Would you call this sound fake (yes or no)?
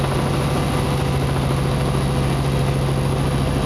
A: no